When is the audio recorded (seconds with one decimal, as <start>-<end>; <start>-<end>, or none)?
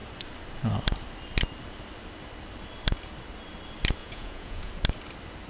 0.0-4.0; 4.7-5.5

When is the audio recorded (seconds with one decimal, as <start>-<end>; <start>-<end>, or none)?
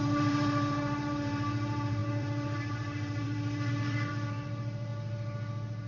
4.9-5.9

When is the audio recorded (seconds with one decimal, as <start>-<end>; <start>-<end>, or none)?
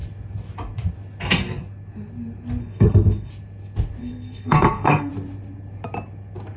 0.0-2.6; 3.3-4.0; 5.1-6.6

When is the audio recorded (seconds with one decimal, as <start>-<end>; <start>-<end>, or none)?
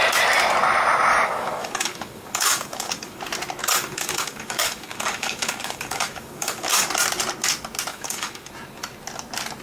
0.0-1.1; 3.2-3.6; 6.9-7.9; 8.5-9.6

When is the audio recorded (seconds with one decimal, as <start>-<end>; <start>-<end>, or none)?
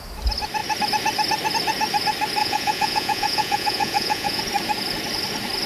0.0-2.4; 4.4-5.7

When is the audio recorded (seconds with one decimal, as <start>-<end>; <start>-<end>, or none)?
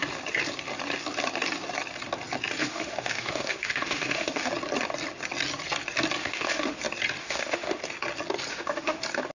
0.0-2.6; 4.5-6.2; 6.8-7.2; 7.8-8.5; 9.0-9.4